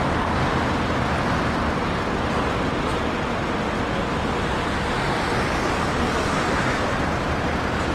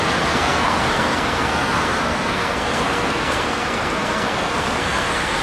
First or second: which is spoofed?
second